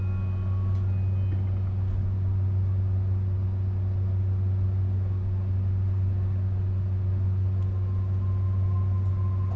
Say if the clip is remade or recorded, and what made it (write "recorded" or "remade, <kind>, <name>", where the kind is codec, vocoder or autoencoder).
recorded